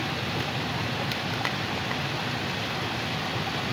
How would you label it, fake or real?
real